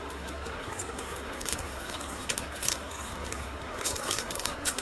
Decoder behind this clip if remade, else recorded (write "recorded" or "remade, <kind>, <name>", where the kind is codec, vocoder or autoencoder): remade, codec, SNAC